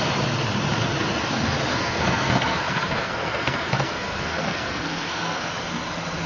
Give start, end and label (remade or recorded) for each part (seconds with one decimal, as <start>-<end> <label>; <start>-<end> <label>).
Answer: 0.0-1.7 recorded; 1.7-5.5 remade; 5.5-6.3 recorded